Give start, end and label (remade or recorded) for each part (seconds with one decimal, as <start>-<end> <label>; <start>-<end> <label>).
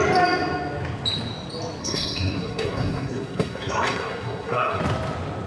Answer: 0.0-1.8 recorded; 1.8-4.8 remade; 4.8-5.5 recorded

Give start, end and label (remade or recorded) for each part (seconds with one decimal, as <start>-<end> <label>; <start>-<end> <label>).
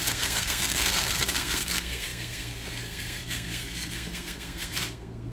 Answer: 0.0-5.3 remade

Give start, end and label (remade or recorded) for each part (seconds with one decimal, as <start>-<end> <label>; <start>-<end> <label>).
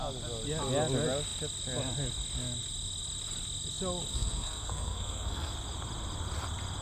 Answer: 0.0-4.1 recorded; 4.1-5.5 remade; 5.5-6.8 recorded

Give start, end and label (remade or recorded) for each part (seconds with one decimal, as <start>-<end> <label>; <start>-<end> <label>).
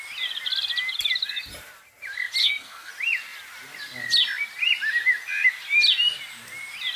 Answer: 0.0-2.4 recorded; 2.4-2.9 remade; 2.9-7.0 recorded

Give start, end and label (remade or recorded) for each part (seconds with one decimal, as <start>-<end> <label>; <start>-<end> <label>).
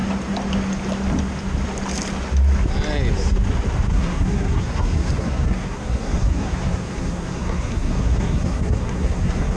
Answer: 0.0-3.9 recorded; 3.9-9.6 remade